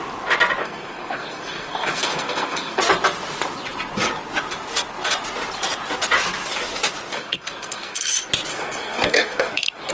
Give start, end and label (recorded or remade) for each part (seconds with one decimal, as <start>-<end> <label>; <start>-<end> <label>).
0.0-0.6 recorded; 0.6-2.8 remade; 2.8-7.1 recorded; 7.1-8.1 remade; 8.1-8.5 recorded; 8.5-9.9 remade